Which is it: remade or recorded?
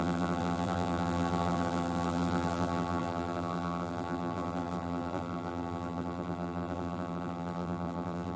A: remade